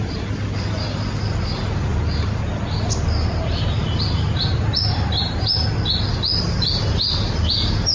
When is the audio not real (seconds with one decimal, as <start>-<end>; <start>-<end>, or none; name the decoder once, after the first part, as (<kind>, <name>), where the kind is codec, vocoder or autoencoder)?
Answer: none